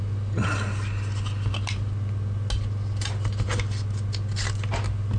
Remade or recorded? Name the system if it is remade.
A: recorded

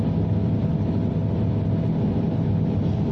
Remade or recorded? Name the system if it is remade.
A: recorded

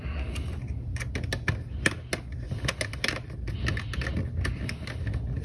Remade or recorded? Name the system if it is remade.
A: recorded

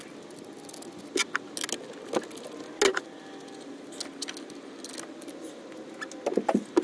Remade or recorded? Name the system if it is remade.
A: recorded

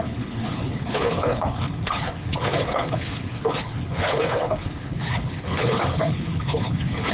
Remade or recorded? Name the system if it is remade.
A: remade, codec, HILCodec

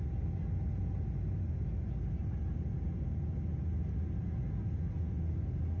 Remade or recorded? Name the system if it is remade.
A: recorded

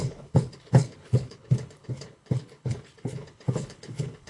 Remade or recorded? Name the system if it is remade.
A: remade, codec, HILCodec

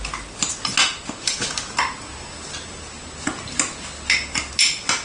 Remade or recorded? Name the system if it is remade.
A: recorded